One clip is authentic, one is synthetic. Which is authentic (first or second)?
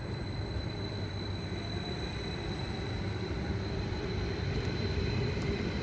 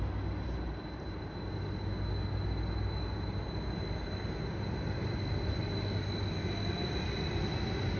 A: second